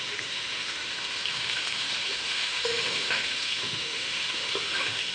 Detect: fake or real fake